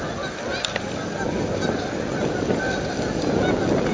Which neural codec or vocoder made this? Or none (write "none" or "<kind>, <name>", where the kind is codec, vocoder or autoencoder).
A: none